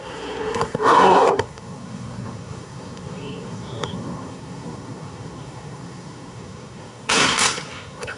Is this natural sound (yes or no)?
no